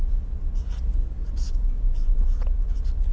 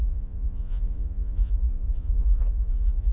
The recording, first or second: first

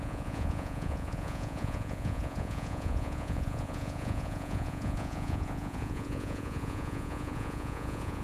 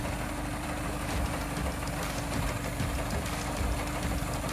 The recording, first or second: second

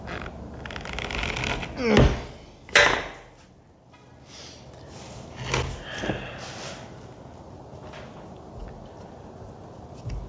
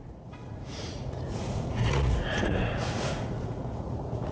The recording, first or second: first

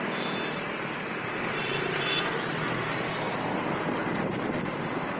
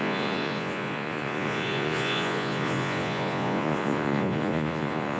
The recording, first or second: first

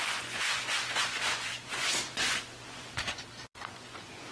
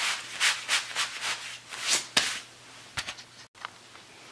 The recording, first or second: second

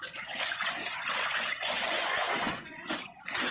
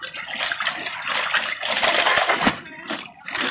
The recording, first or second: second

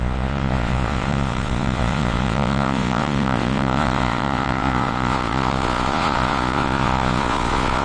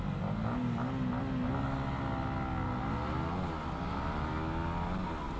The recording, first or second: second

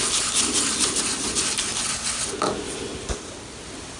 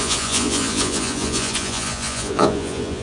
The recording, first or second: first